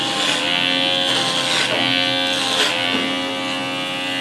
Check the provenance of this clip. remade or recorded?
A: recorded